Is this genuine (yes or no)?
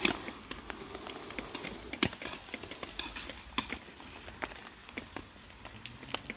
yes